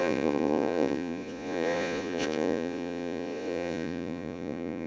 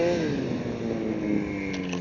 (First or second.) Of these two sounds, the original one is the second